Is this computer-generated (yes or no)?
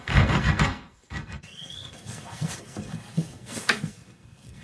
yes